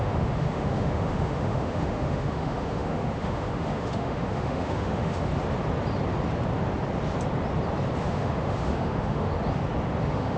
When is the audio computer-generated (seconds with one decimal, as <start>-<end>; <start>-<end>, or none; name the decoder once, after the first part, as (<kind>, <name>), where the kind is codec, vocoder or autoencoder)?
0.0-5.3 (autoencoder, DAC-VAE); 8.0-9.3; 10.0-10.4

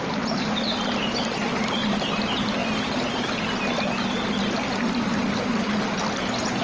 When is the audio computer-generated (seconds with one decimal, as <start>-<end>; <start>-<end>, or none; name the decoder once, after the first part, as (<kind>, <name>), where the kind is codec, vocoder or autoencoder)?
none

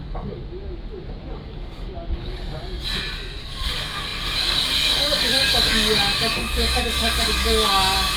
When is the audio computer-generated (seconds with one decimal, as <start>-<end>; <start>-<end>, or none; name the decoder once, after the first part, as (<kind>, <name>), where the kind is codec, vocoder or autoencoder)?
0.0-0.4 (codec, DAC); 1.3-1.9; 3.4-8.2

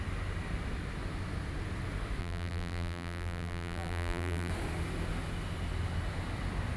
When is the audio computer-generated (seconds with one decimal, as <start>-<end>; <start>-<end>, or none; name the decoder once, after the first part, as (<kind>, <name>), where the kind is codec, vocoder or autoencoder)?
2.2-4.5 (vocoder, BigVGAN v2)

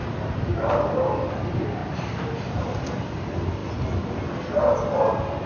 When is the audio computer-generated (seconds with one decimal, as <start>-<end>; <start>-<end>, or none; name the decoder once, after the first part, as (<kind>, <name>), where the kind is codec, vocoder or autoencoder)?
1.3-3.6 (vocoder, BigVGAN v2)

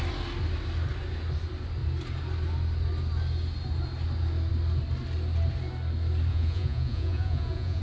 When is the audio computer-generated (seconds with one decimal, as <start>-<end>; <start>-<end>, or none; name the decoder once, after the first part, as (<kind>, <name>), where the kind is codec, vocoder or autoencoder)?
6.3-7.8 (vocoder, Vocos)

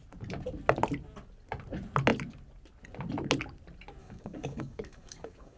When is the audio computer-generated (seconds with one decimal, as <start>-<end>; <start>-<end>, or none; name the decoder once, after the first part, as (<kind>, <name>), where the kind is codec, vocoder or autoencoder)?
4.0-5.6 (codec, DAC)